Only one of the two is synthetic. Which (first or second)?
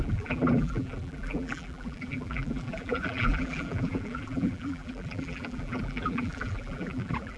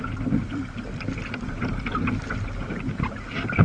first